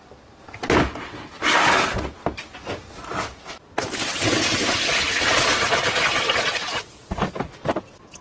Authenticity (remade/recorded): recorded